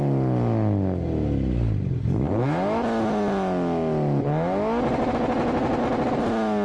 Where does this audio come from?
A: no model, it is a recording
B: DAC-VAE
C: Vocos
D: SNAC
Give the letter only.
A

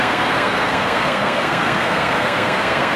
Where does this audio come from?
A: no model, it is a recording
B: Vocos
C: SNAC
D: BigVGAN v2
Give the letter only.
C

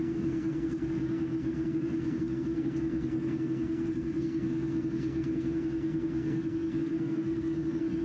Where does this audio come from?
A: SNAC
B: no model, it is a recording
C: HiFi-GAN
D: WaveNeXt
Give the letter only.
A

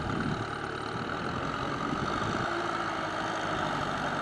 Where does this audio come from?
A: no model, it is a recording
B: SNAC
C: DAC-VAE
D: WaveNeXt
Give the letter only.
A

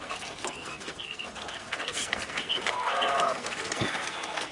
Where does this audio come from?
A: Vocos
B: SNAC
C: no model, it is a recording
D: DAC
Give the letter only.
B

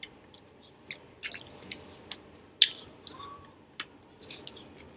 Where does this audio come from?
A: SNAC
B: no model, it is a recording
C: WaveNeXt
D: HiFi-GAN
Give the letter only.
B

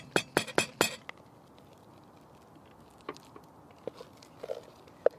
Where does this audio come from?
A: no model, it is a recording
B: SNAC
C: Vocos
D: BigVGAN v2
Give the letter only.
A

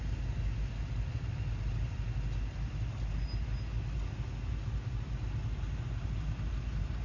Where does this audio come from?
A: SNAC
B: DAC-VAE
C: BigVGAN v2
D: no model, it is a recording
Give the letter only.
D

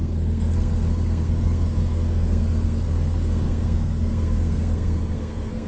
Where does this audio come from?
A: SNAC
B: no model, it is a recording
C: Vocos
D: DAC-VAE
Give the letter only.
A